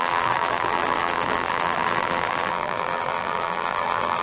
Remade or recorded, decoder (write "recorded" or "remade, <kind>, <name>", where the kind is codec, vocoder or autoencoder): remade, vocoder, BigVGAN v2